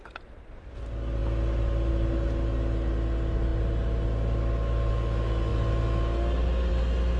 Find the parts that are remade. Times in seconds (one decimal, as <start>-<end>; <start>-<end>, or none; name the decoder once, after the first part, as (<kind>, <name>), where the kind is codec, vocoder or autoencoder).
none